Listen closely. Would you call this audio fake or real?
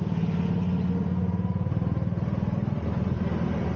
real